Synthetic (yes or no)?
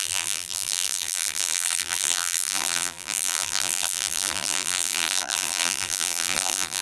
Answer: yes